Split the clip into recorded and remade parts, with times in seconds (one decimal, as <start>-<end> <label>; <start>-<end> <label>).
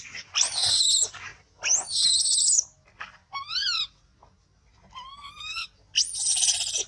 0.0-6.9 recorded